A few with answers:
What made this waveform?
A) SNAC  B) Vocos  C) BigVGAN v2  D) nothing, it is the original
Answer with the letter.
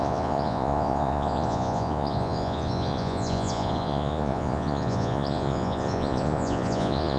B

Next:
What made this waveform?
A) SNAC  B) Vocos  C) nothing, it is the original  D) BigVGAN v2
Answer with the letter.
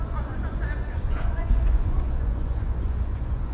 B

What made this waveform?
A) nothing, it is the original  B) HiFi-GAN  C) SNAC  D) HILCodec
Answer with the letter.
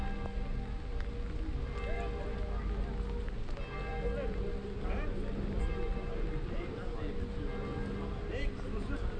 A